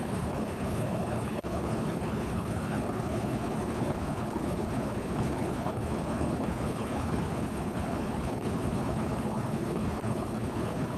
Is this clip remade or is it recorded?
remade